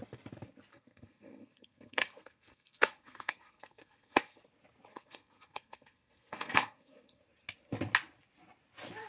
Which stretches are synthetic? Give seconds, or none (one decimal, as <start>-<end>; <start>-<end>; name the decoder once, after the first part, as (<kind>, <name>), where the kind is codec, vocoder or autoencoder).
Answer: 0.7-4.4 (codec, SNAC); 4.9-7.2

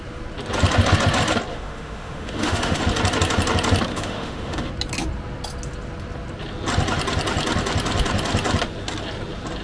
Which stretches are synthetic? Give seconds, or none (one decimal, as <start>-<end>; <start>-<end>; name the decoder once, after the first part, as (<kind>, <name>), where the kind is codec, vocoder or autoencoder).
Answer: 1.5-2.8 (autoencoder, DAC-VAE); 3.9-4.7

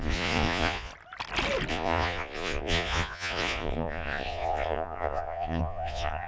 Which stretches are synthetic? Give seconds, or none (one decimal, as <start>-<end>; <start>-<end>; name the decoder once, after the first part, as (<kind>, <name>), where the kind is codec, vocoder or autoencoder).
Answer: 0.0-0.9 (vocoder, Vocos); 1.7-6.3

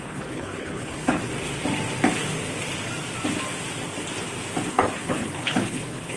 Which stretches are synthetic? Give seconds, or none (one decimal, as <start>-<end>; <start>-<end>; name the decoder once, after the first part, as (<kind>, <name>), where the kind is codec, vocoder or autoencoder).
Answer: 0.0-1.3 (codec, HILCodec); 4.7-6.2

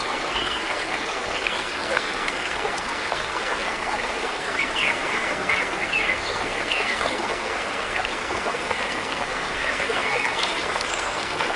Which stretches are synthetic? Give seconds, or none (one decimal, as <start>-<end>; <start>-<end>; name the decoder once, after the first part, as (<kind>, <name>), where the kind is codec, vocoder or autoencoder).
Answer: 0.0-11.6 (codec, SNAC)

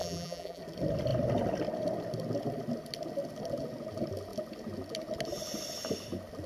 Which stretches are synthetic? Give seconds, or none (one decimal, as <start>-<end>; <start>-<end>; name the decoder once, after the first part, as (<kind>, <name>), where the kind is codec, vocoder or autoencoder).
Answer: 0.0-0.6 (vocoder, BigVGAN v2)